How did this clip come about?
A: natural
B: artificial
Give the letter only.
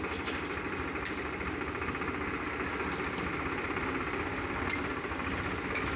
A